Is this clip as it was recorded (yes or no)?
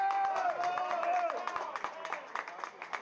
yes